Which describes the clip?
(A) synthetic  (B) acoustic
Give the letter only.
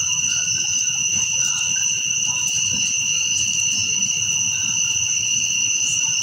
A